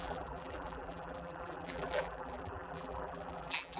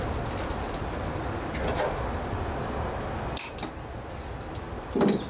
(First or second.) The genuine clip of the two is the second